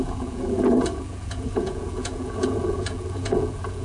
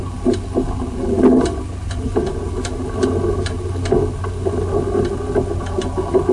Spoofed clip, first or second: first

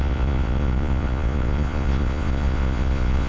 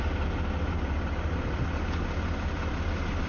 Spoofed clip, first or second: first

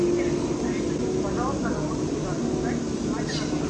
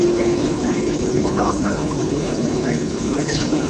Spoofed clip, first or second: second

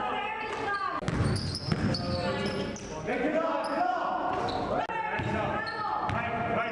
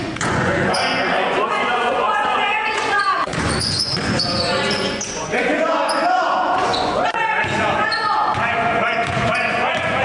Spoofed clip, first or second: second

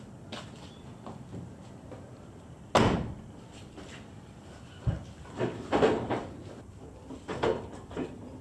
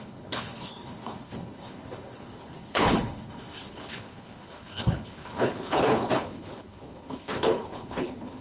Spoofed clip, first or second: second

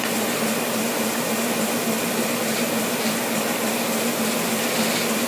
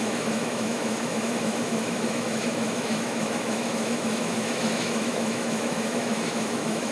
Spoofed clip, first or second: second